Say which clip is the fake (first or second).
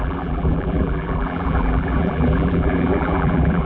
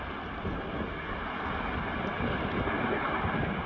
first